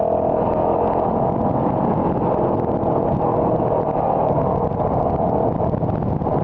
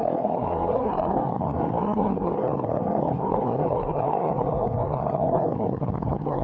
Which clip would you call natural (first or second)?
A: first